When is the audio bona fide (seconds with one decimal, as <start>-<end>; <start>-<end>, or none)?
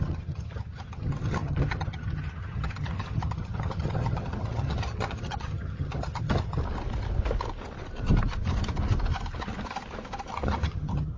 6.6-10.3